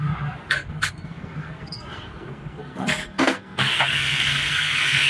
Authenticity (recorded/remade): remade